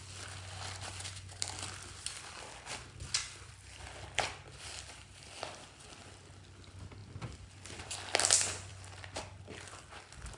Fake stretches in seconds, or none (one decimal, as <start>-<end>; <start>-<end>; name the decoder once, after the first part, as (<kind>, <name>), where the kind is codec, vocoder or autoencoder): 8.7-9.8 (vocoder, BigVGAN v2)